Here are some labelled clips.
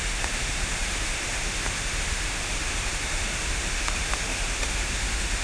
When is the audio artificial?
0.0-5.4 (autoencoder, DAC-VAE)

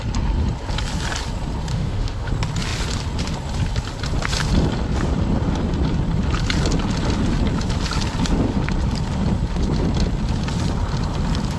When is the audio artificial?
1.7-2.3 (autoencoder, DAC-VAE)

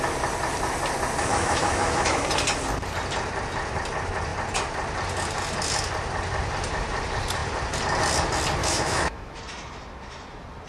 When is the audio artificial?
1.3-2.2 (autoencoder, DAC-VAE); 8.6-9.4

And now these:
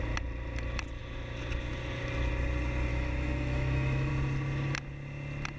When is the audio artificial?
2.9-4.1 (autoencoder, DAC-VAE)